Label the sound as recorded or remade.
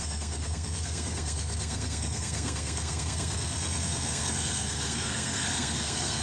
remade